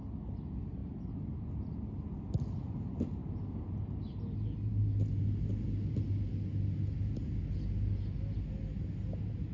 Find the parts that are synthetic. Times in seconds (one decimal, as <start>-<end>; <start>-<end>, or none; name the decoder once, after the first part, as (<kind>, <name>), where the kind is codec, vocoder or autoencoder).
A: none